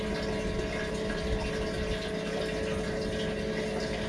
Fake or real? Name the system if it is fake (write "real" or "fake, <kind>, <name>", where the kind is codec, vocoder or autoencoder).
real